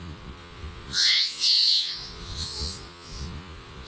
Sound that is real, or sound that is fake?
fake